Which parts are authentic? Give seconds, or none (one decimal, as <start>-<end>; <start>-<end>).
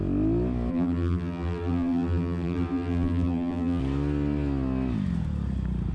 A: 0.0-0.7; 3.8-5.9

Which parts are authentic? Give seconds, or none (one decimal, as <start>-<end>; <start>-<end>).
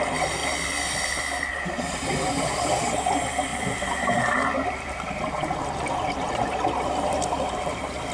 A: 0.4-1.4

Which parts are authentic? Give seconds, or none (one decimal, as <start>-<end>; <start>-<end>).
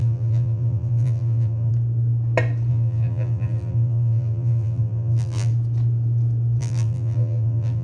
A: 1.7-2.7; 5.5-6.6